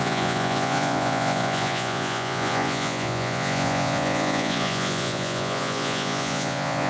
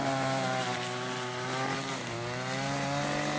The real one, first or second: second